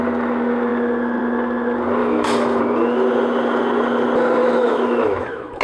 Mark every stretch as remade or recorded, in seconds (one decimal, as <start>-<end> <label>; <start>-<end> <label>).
0.0-2.0 recorded; 2.0-2.6 remade; 2.6-4.4 recorded; 4.4-5.6 remade

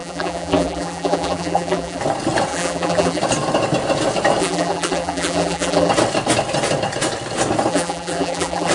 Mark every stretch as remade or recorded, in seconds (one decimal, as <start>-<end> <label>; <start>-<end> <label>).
0.0-2.0 remade; 2.0-2.5 recorded; 2.5-3.2 remade; 3.2-4.4 recorded; 4.4-5.9 remade; 5.9-7.7 recorded; 7.7-8.7 remade

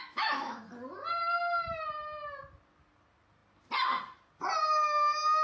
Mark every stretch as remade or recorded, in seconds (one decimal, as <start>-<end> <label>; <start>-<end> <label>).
0.0-0.6 remade; 0.6-5.4 recorded

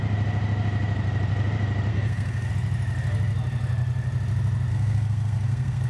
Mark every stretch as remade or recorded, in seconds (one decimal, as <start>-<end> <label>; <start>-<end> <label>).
0.0-1.9 recorded; 1.9-2.5 remade; 2.5-4.7 recorded; 4.7-5.9 remade

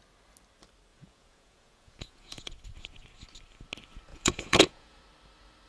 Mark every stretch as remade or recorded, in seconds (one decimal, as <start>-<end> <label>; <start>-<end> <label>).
0.0-0.9 recorded; 0.9-2.5 remade; 2.5-4.1 recorded; 4.1-5.0 remade; 5.0-5.7 recorded

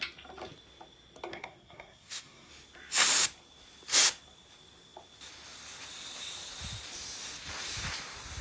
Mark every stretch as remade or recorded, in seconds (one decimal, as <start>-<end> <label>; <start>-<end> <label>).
0.0-1.3 recorded; 1.3-2.5 remade; 2.5-8.4 recorded

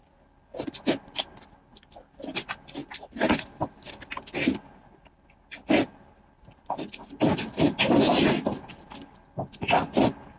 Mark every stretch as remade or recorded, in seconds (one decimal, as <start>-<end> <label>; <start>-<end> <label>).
0.0-10.4 recorded

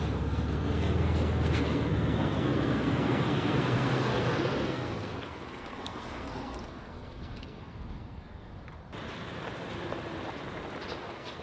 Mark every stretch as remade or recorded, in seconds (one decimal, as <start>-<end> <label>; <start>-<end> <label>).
0.0-8.5 remade; 8.5-11.0 recorded; 11.0-11.4 remade